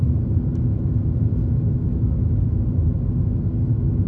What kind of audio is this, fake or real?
real